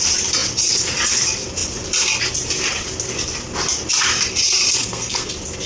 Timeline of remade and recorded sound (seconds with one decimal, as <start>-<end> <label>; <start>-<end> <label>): 0.0-4.8 recorded; 4.8-5.3 remade; 5.3-5.7 recorded